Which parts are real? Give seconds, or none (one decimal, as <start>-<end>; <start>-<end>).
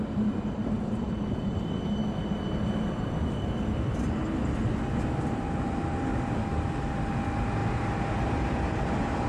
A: 2.0-5.5; 6.1-7.1